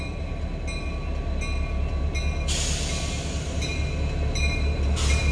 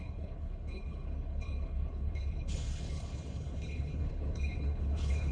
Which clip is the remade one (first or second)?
second